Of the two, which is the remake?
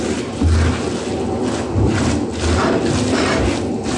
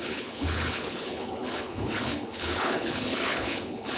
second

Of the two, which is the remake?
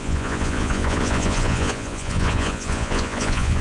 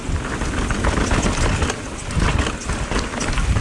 first